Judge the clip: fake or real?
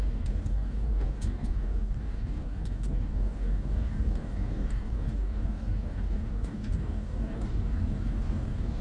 fake